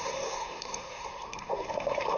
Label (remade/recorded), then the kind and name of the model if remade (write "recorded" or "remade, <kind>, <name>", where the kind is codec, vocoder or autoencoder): remade, codec, SNAC